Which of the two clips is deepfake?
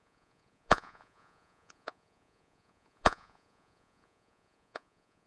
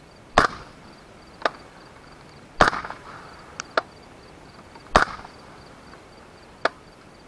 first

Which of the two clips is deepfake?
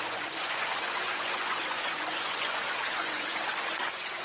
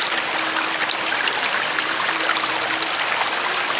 first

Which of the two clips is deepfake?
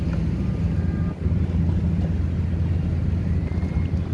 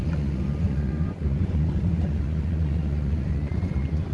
second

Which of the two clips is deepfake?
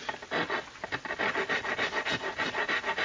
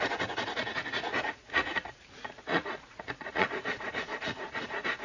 second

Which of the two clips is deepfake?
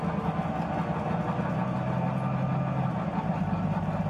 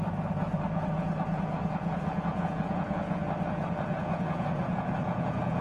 second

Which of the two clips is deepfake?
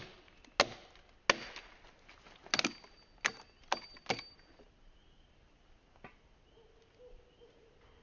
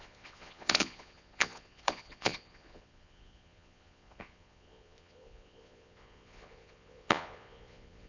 second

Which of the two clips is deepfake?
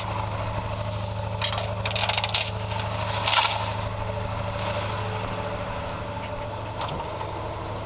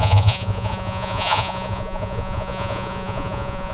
second